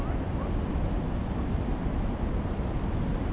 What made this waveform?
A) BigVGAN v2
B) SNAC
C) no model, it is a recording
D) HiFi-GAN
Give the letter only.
C